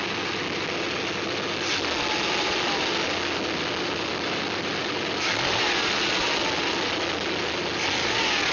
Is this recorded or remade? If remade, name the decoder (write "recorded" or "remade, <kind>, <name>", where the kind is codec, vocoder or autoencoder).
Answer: recorded